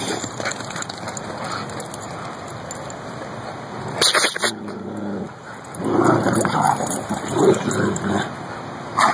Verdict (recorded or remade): recorded